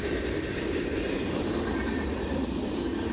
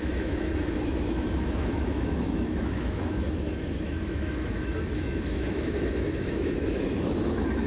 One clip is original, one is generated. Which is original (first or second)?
first